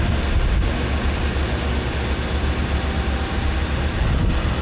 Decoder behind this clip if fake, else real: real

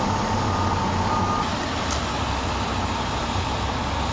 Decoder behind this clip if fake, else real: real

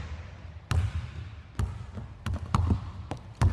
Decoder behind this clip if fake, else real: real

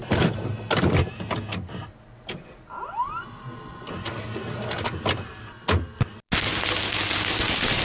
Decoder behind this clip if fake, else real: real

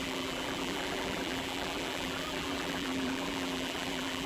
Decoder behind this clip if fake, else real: fake, vocoder, BigVGAN v2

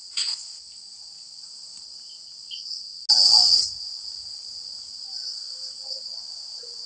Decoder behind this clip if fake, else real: real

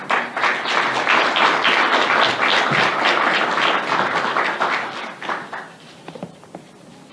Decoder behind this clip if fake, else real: real